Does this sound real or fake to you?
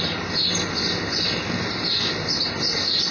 real